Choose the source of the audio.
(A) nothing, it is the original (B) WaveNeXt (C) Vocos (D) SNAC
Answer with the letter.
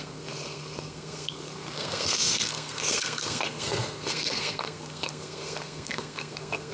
D